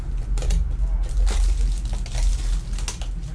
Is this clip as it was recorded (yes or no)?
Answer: yes